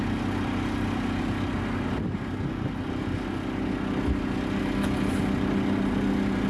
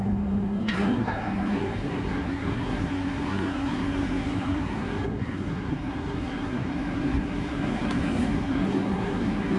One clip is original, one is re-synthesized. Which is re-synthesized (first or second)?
second